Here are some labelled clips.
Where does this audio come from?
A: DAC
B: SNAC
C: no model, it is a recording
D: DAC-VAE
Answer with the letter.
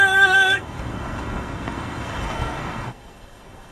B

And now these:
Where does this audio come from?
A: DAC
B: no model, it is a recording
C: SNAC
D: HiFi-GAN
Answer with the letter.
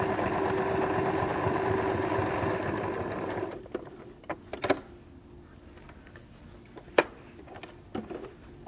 B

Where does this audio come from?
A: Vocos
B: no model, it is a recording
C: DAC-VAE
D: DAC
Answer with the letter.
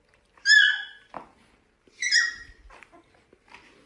B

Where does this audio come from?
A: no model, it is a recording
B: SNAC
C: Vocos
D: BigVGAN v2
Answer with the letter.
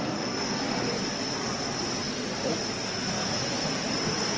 A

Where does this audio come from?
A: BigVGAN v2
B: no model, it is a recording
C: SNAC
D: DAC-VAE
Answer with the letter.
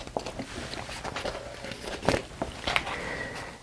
B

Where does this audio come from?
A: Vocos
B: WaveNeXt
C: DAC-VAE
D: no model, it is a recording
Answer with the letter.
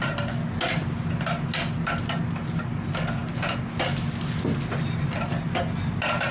D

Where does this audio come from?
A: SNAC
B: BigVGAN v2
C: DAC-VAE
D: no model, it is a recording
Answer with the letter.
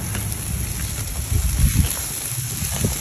D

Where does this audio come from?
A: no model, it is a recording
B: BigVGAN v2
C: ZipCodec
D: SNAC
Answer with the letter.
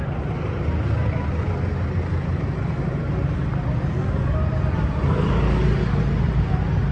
A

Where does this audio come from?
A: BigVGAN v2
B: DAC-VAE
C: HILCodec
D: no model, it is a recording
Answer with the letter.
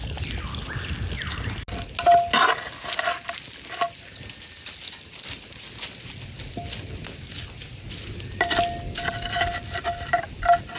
D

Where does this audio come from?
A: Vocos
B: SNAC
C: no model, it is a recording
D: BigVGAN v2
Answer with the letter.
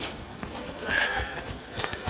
B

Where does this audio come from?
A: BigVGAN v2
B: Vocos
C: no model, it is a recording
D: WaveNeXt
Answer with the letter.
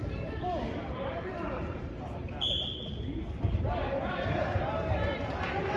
A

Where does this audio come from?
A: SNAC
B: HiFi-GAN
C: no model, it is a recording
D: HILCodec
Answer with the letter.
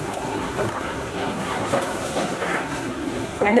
A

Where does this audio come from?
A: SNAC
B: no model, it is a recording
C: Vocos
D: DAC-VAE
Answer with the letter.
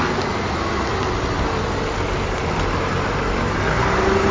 B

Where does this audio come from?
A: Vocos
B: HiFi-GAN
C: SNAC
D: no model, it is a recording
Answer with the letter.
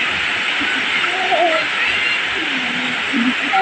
D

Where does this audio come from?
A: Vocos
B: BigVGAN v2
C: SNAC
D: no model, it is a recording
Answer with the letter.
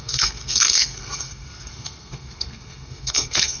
C